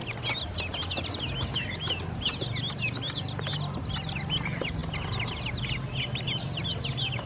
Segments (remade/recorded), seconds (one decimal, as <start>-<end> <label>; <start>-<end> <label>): 0.0-7.3 recorded